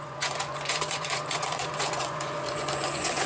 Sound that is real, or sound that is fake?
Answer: fake